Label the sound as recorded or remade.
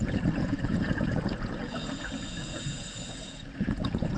remade